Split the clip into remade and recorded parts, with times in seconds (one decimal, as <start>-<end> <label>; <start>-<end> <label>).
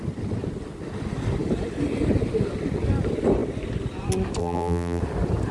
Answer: 0.0-4.4 recorded; 4.4-5.0 remade; 5.0-5.5 recorded